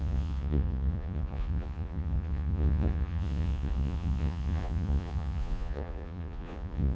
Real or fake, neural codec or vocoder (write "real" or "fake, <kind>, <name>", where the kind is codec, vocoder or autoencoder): fake, vocoder, Vocos